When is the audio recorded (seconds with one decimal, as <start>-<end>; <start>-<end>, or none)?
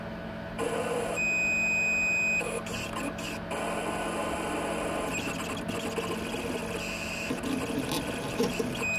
0.0-9.0